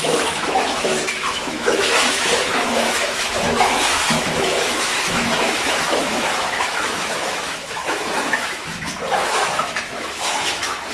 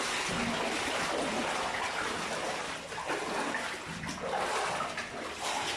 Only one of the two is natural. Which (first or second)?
second